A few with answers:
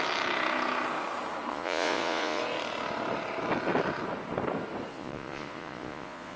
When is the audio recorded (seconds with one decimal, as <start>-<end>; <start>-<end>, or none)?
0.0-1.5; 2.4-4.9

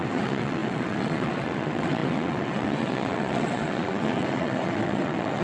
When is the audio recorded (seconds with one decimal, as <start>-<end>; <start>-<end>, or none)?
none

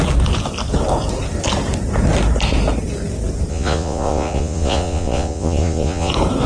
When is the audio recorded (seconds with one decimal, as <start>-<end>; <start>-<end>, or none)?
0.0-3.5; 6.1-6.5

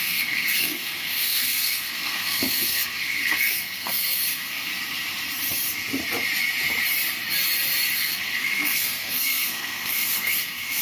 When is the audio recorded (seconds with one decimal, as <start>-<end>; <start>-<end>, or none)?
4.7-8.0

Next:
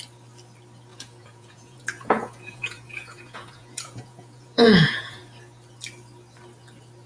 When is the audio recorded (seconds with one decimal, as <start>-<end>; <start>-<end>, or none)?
0.0-0.9; 5.2-7.1

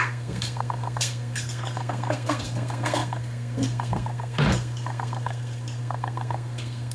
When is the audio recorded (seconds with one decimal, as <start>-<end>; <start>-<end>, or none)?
none